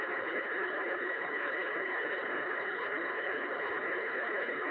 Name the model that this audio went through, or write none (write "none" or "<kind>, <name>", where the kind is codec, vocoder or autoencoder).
codec, HILCodec